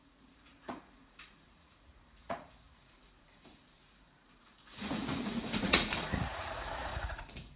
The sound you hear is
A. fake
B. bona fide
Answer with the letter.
A